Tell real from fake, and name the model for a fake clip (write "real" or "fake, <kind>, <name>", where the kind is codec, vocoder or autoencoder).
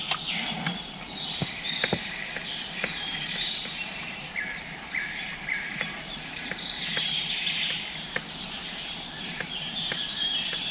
fake, vocoder, BigVGAN v2